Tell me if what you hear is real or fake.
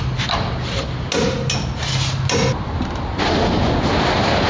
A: real